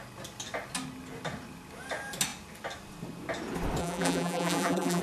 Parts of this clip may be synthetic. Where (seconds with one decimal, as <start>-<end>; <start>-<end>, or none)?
3.8-5.0